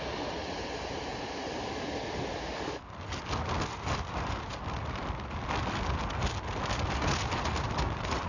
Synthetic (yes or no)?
no